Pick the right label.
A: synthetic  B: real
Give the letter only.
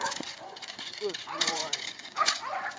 A